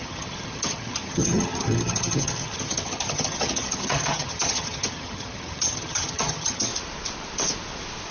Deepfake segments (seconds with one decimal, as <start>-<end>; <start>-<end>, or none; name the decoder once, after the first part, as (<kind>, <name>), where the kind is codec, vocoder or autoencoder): 0.0-6.7 (vocoder, HiFi-GAN)